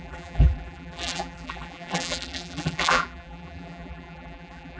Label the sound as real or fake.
fake